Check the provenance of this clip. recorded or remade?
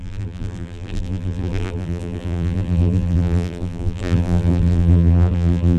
remade